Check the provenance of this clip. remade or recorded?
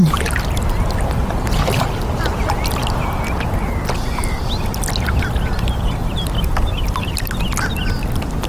recorded